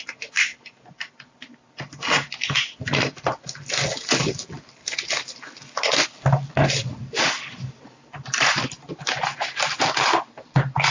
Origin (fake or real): real